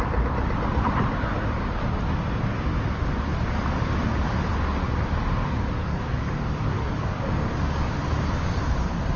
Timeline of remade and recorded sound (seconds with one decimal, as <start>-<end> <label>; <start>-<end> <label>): 0.0-5.4 recorded; 5.4-7.5 remade; 7.5-9.2 recorded